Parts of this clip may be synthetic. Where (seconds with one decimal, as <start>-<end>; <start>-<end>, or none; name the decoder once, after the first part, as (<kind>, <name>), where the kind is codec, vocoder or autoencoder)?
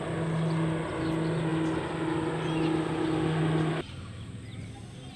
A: none